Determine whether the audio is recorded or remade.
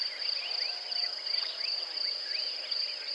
recorded